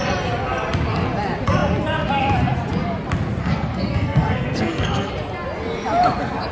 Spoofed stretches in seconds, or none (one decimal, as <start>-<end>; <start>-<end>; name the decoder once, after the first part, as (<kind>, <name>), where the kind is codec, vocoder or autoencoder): 3.4-5.1 (codec, SNAC)